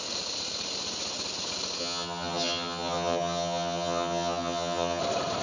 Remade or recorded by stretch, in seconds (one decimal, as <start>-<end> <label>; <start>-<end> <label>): 0.0-1.8 recorded; 1.8-5.0 remade; 5.0-5.4 recorded